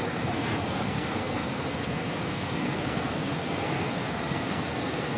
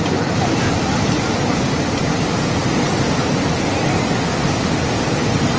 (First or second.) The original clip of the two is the second